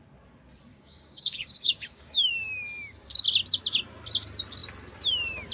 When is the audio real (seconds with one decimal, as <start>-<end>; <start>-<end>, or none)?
0.0-0.7; 2.3-5.5